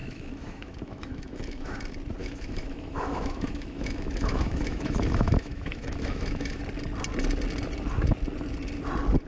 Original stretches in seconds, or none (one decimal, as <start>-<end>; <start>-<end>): 1.8-2.2; 6.6-9.3